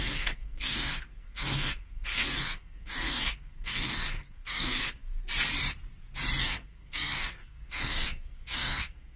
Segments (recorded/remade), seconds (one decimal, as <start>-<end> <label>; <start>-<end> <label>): 0.0-5.0 remade; 5.0-6.4 recorded; 6.4-9.2 remade